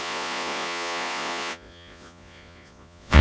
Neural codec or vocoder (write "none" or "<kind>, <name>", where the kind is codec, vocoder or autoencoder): vocoder, Vocos